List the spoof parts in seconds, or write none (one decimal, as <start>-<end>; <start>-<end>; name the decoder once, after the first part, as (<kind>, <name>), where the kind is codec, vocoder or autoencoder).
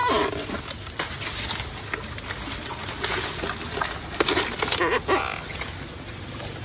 0.0-0.6 (vocoder, BigVGAN v2)